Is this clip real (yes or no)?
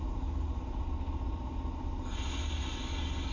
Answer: yes